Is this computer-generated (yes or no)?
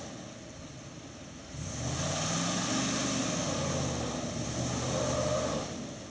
no